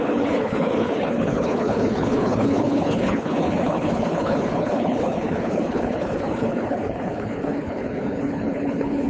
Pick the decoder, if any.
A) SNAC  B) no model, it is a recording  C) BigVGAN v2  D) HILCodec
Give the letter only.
D